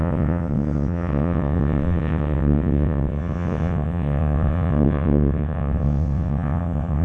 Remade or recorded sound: remade